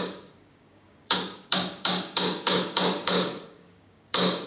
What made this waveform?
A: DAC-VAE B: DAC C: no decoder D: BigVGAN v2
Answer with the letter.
B